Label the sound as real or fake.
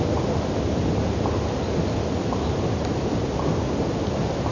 real